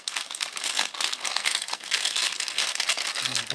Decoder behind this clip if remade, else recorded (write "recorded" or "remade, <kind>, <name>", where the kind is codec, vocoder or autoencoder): remade, codec, SNAC